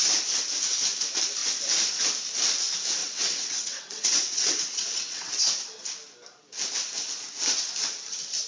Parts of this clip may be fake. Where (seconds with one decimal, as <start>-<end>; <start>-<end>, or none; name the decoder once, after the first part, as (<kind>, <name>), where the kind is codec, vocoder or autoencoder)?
3.0-5.3 (vocoder, WaveNeXt)